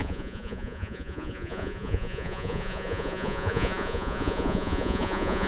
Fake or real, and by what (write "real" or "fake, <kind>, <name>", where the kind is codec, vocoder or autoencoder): fake, vocoder, Vocos